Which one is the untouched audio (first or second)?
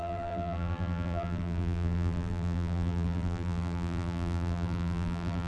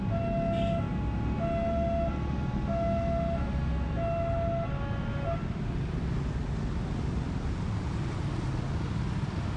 second